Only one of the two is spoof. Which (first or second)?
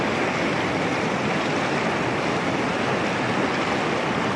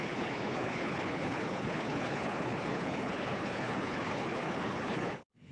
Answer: second